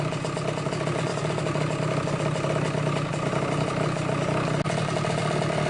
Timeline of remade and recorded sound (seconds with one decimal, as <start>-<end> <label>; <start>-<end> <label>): 0.0-5.7 recorded